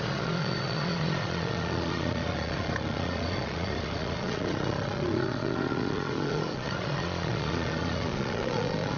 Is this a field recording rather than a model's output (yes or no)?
no